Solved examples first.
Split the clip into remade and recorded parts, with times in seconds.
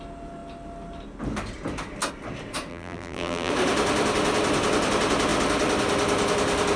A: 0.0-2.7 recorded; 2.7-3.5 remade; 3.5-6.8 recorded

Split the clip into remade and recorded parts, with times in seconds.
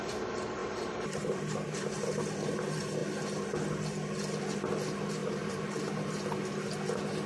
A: 0.0-0.6 recorded; 0.6-1.9 remade; 1.9-5.2 recorded; 5.2-5.8 remade; 5.8-7.3 recorded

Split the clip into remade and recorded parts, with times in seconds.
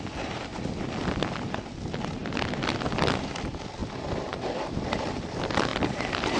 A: 0.0-6.4 recorded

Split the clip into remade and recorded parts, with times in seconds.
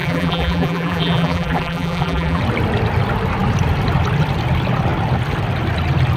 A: 0.0-2.4 remade; 2.4-6.2 recorded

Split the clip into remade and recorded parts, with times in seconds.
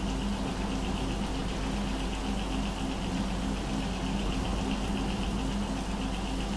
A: 0.0-6.6 recorded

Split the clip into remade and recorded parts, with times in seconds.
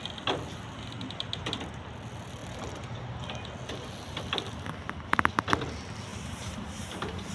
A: 0.0-6.1 recorded; 6.1-7.3 remade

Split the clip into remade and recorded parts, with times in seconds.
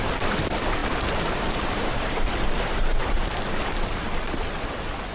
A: 0.0-0.8 recorded; 0.8-3.3 remade; 3.3-5.1 recorded